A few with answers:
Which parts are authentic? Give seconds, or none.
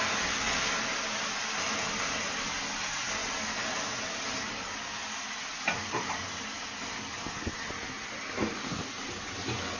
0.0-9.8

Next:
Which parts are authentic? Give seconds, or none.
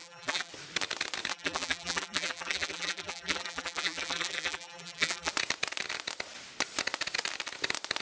0.5-1.3; 5.3-8.0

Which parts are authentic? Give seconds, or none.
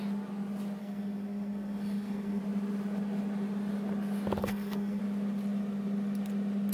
0.0-0.8; 2.4-4.4; 5.0-6.7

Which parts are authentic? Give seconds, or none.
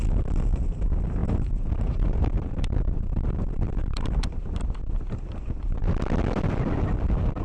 0.0-1.2; 4.3-7.4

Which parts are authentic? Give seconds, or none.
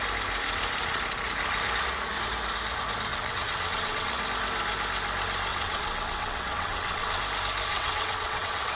0.0-3.1; 4.2-5.5; 7.2-7.7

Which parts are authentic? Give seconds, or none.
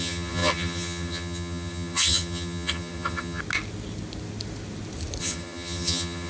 3.4-5.2